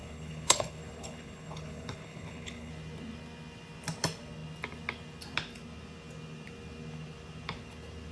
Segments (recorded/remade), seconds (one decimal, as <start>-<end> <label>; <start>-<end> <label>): 0.0-2.7 remade; 2.7-8.1 recorded